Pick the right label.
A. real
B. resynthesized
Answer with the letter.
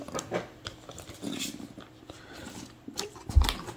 A